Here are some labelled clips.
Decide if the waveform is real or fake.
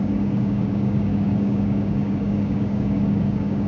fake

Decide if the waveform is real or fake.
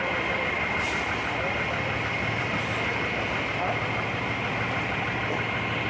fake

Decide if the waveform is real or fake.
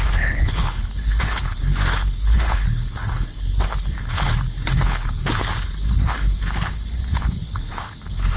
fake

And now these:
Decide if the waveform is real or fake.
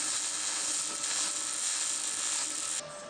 real